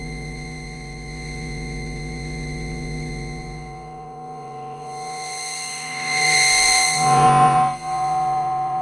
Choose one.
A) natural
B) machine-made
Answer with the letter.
B